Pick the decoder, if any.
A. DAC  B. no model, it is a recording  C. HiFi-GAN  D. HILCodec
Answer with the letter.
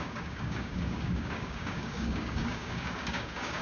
A